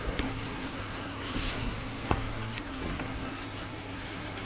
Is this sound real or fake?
fake